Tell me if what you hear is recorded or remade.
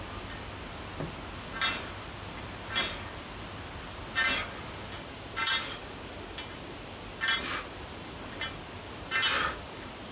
recorded